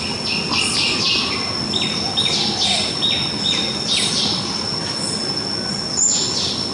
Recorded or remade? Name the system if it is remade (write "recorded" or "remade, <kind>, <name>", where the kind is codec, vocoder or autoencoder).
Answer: recorded